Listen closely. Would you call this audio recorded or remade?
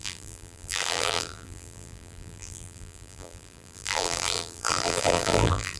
remade